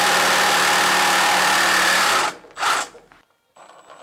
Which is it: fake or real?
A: real